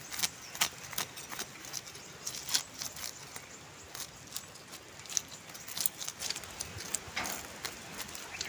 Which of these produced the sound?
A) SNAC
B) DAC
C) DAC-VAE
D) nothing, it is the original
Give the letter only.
D